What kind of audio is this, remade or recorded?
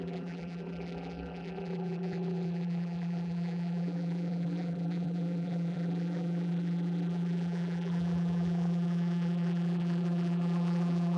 remade